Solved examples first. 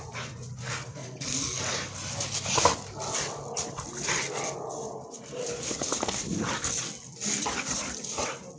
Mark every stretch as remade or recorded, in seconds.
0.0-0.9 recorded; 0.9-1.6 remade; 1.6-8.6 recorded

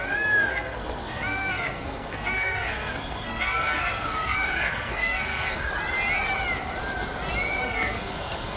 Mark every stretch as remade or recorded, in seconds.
0.0-5.7 remade; 5.7-7.6 recorded; 7.6-8.6 remade

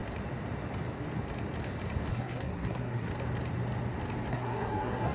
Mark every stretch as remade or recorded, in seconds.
0.0-2.1 recorded; 2.1-3.1 remade; 3.1-4.3 recorded; 4.3-5.1 remade

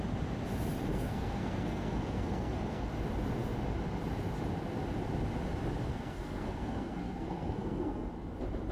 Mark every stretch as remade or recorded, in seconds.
0.0-0.9 recorded; 0.9-2.9 remade; 2.9-5.9 recorded; 5.9-8.1 remade; 8.1-8.7 recorded

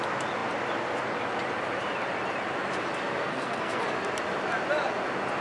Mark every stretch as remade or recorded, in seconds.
0.0-3.2 recorded; 3.2-3.8 remade; 3.8-5.4 recorded